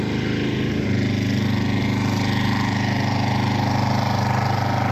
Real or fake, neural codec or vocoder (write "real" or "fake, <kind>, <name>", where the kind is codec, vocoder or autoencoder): real